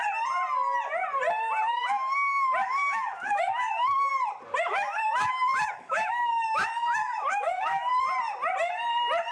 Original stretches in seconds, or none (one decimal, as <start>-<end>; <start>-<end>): 0.0-1.6; 4.1-4.7; 7.9-9.3